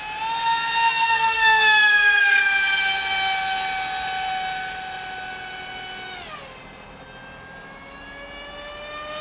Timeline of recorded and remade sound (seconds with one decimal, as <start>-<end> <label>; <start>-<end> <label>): 0.0-0.9 recorded; 0.9-2.4 remade; 2.4-9.2 recorded